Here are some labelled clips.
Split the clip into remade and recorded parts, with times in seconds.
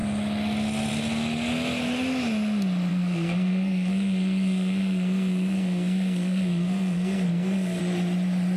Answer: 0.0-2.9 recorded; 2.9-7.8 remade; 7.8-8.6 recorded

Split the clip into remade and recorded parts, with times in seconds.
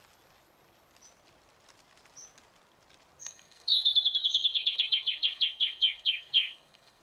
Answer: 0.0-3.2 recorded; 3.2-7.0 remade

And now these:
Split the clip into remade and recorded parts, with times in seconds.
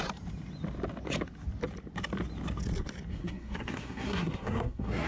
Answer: 0.0-3.1 recorded; 3.1-5.1 remade